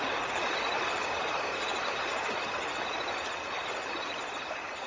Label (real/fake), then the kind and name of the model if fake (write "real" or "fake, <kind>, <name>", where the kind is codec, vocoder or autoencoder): real